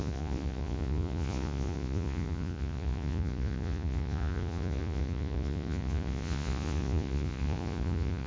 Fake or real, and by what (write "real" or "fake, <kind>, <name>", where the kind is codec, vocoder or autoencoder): fake, vocoder, Vocos